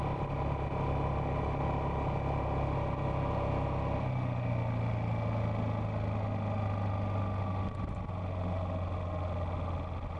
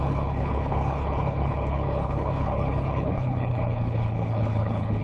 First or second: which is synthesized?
second